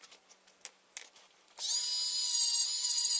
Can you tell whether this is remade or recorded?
recorded